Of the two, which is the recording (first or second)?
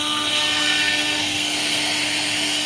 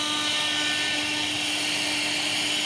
second